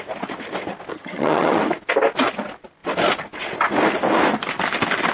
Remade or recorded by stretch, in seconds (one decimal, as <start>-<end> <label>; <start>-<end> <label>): 0.0-0.9 recorded; 0.9-1.6 remade; 1.6-5.1 recorded